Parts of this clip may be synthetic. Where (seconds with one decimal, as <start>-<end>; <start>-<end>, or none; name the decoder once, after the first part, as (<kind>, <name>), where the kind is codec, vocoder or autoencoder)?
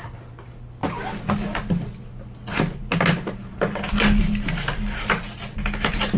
none